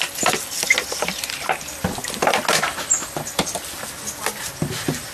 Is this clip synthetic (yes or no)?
no